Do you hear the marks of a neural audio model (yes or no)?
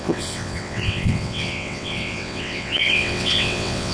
yes